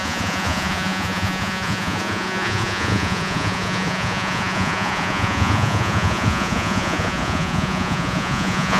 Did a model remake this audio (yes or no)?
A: yes